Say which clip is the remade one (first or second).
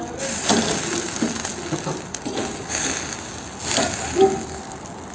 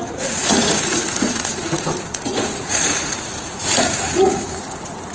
second